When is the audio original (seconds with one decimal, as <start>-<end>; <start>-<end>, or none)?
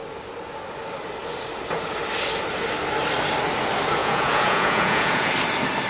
0.0-4.0; 5.3-5.9